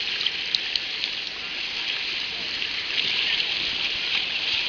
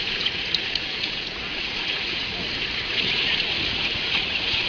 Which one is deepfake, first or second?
second